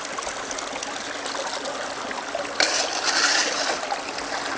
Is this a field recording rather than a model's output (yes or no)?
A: yes